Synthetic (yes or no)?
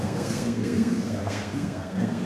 yes